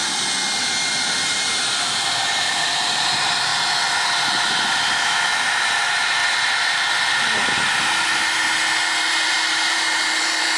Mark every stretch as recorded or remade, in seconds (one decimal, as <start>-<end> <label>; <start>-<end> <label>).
0.0-1.0 recorded; 1.0-3.5 remade; 3.5-5.3 recorded; 5.3-6.2 remade; 6.2-9.0 recorded; 9.0-10.6 remade